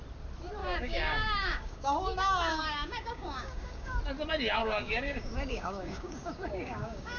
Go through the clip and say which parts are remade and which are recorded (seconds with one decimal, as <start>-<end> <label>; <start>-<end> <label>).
0.0-0.6 recorded; 0.6-4.0 remade; 4.0-4.6 recorded; 4.6-7.2 remade